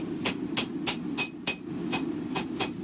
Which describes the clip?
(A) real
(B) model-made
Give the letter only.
A